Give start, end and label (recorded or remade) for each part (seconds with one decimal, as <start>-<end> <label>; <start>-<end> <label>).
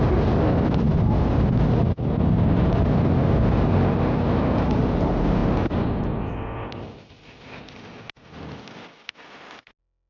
0.0-10.1 recorded